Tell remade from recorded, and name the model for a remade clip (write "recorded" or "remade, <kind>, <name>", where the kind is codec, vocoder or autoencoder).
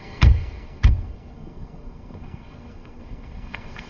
remade, codec, SNAC